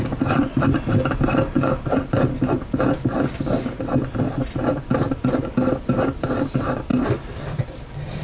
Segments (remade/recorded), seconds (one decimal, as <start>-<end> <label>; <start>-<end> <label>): 0.0-8.2 recorded